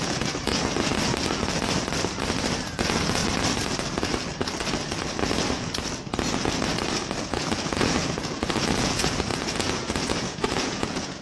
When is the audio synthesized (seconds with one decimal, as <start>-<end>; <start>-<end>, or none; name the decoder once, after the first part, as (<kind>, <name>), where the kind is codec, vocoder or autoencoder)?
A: 0.0-0.9 (vocoder, Vocos); 2.8-3.2; 7.2-11.2